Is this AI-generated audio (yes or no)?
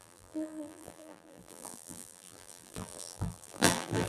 yes